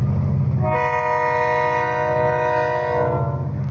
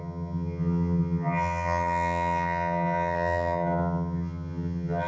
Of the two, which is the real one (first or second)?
first